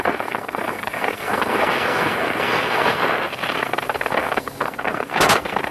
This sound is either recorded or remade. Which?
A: remade